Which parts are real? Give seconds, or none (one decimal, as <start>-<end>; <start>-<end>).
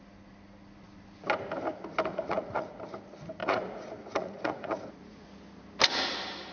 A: 0.0-2.1; 2.7-3.4; 5.3-6.5